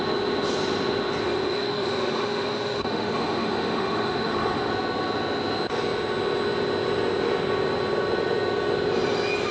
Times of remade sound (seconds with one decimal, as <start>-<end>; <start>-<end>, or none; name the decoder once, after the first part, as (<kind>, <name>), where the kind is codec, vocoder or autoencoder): 1.2-4.7 (autoencoder, DAC-VAE)